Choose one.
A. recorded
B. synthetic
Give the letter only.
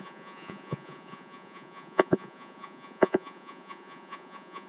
B